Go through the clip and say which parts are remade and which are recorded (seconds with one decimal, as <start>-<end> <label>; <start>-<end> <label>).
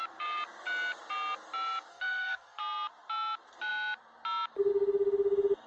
0.0-1.9 recorded; 1.9-2.6 remade; 2.6-5.7 recorded